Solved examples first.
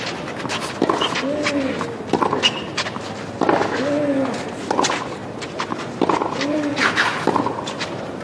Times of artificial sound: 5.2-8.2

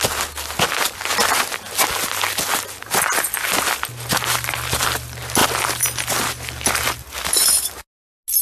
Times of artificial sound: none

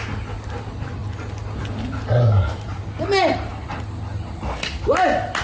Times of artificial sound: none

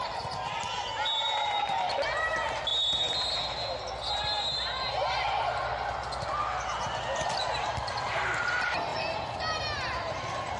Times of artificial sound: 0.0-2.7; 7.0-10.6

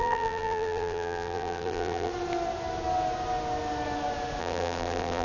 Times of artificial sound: 0.0-2.1; 4.4-5.2

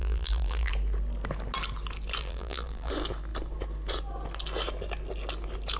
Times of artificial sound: 0.0-0.7; 2.2-2.9

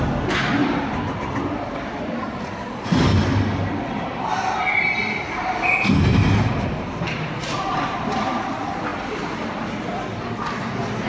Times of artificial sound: 0.6-5.5; 6.1-8.3

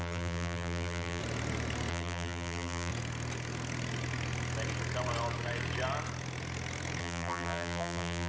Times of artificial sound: 0.0-1.2; 1.9-2.9; 7.0-8.3